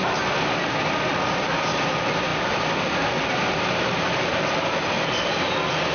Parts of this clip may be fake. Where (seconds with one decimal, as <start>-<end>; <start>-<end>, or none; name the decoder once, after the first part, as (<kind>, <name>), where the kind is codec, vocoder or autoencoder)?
none